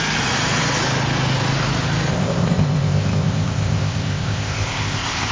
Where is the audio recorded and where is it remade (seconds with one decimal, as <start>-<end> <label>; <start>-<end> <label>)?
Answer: 0.0-2.1 recorded; 2.1-5.3 remade